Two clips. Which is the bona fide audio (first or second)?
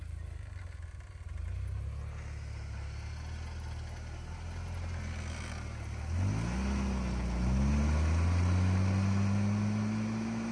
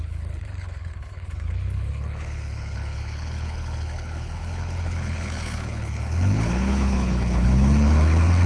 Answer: first